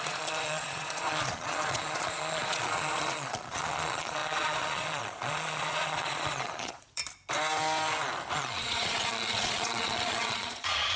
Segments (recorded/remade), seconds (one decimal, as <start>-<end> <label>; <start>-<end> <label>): 0.0-7.0 remade; 7.0-8.3 recorded; 8.3-11.0 remade